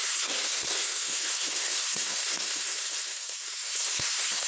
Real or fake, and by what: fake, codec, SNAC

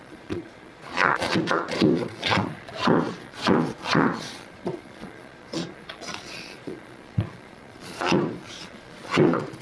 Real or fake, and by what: fake, vocoder, Vocos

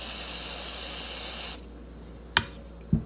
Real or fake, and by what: real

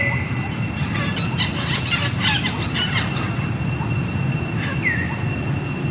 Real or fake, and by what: real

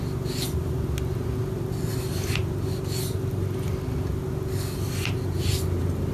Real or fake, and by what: real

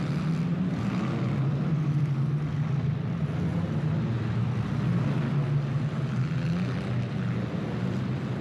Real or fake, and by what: real